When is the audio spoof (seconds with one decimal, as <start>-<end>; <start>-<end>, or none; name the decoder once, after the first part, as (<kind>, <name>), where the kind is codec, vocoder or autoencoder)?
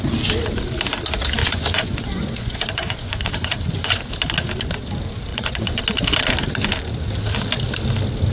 1.4-4.0 (vocoder, Vocos); 5.3-5.8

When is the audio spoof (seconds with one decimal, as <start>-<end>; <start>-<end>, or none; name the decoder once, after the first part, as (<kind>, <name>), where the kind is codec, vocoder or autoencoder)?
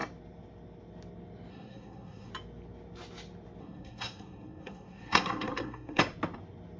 1.5-2.3 (codec, SNAC); 3.6-6.0